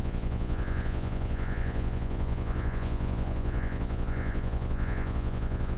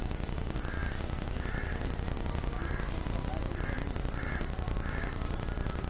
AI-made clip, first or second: first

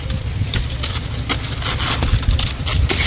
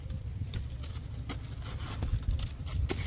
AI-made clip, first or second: second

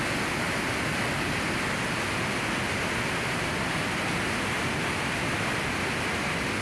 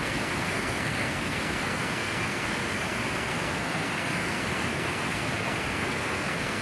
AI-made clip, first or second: second